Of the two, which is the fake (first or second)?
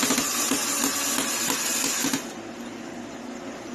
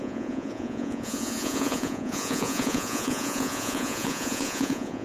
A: second